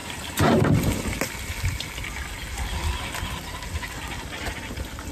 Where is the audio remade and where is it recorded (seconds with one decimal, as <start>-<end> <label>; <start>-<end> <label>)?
0.0-5.1 recorded